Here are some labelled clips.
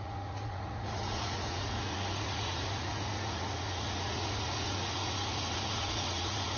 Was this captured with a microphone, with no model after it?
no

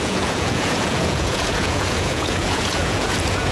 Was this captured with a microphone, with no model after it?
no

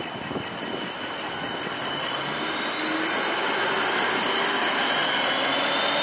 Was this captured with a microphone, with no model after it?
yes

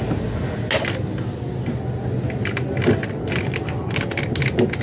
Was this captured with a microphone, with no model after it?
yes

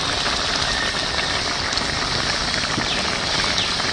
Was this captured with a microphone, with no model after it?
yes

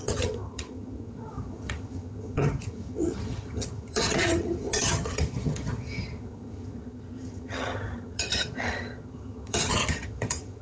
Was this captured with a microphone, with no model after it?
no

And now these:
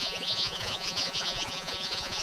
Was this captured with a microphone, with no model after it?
no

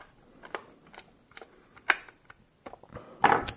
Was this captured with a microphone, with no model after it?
yes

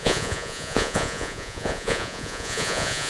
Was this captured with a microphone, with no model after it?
no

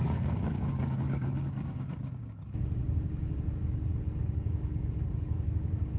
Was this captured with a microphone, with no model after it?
no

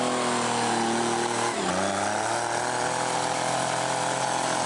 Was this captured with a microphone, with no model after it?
yes